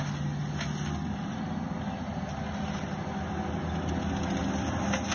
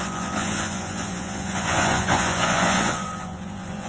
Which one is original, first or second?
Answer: first